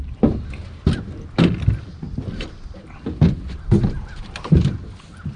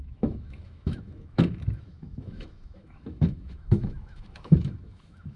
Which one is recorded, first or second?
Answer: first